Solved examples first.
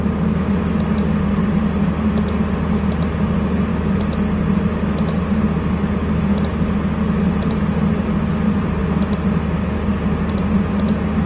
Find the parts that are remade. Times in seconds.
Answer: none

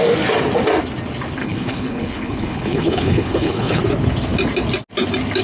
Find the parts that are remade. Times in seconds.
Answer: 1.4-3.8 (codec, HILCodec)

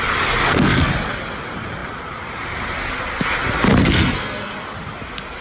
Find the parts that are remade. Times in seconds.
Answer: 0.4-0.9 (codec, SNAC); 3.8-4.5

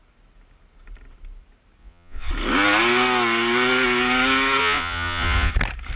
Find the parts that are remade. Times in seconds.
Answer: 1.8-2.3 (vocoder, Vocos); 4.6-5.5